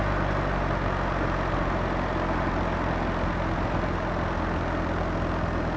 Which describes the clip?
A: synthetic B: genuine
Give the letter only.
B